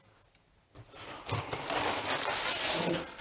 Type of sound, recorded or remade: recorded